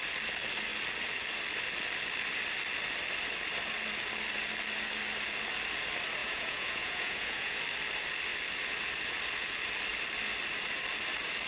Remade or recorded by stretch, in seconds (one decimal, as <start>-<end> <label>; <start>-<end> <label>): 0.0-6.2 recorded; 6.2-7.6 remade; 7.6-11.5 recorded